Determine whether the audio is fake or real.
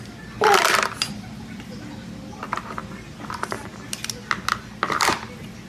real